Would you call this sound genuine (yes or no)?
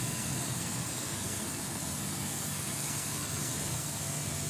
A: no